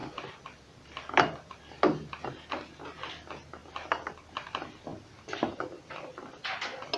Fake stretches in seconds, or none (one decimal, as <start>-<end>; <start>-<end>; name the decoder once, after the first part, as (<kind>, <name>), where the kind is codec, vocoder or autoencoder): 0.0-1.6 (vocoder, BigVGAN v2); 4.9-6.3